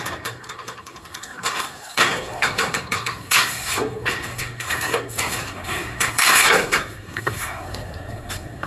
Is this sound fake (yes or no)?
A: yes